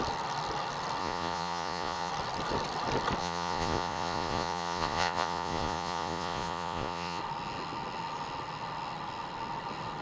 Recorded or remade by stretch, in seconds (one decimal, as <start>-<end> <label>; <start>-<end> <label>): 0.0-1.0 recorded; 1.0-2.1 remade; 2.1-3.2 recorded; 3.2-7.2 remade; 7.2-10.0 recorded